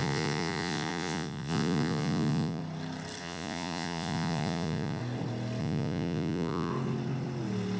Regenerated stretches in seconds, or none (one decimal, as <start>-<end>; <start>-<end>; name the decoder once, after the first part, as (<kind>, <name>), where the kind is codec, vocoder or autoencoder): 0.0-2.6 (vocoder, Vocos); 3.2-5.0; 5.6-6.7